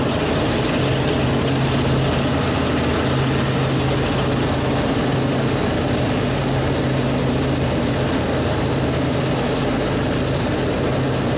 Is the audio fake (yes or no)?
no